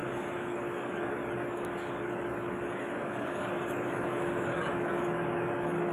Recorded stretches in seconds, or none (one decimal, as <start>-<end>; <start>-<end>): none